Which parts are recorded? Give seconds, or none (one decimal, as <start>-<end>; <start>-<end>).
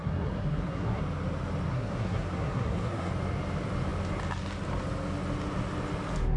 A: 1.0-1.7; 3.1-6.4